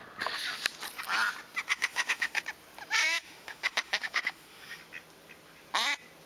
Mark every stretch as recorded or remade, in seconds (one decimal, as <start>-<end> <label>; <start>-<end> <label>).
0.0-1.7 recorded; 1.7-2.4 remade; 2.4-3.0 recorded; 3.0-4.8 remade; 4.8-6.3 recorded